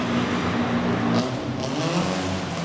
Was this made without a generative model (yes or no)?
yes